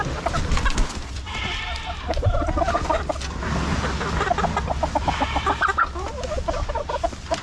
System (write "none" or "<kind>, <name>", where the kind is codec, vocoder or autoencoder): none